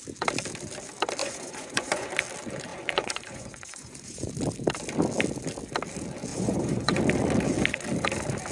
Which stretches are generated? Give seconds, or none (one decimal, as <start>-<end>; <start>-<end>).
1.2-2.1; 2.7-4.3; 6.3-7.0